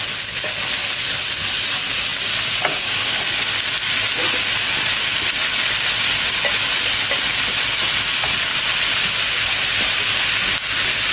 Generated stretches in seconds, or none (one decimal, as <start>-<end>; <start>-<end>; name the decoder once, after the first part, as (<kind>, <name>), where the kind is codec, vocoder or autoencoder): none